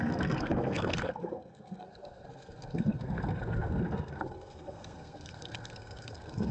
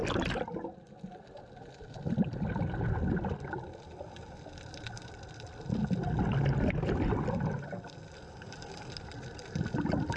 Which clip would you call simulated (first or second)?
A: first